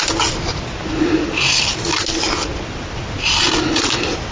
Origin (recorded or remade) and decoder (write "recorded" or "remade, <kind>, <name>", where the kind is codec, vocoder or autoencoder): recorded